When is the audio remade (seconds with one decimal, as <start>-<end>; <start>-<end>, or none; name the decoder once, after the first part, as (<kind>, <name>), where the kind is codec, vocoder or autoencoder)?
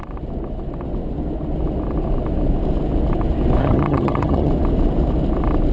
3.6-4.5 (vocoder, HiFi-GAN)